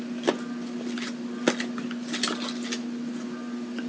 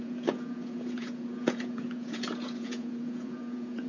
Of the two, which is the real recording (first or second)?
first